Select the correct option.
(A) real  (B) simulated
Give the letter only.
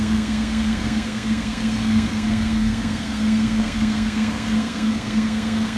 B